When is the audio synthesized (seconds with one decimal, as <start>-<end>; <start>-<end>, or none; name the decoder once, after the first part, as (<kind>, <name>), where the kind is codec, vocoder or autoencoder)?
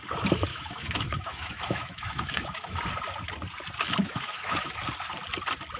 0.5-2.8 (autoencoder, DAC-VAE); 4.0-4.7